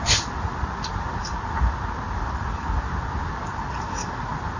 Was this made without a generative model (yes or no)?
yes